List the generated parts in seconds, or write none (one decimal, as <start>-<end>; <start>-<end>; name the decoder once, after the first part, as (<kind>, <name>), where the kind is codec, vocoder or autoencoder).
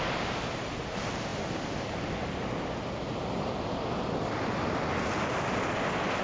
none